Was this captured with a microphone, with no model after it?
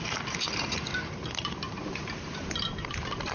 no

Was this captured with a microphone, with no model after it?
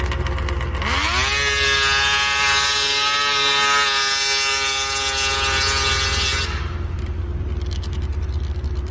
yes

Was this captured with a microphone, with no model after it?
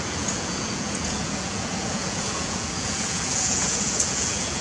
no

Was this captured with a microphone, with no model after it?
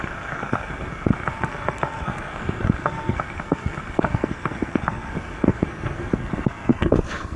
no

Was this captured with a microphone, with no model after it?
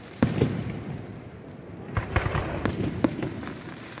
no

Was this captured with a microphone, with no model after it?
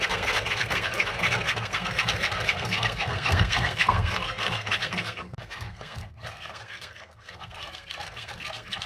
no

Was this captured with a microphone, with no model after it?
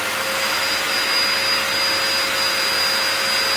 yes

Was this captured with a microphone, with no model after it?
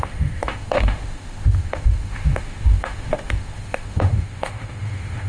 no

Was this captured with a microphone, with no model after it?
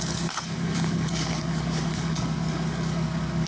no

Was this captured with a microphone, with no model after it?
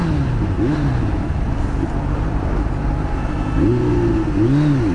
yes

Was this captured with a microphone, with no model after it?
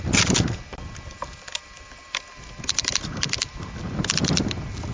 yes